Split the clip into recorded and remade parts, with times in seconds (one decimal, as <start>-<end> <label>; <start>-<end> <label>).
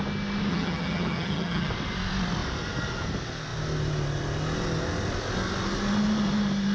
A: 0.0-0.5 recorded; 0.5-1.7 remade; 1.7-6.7 recorded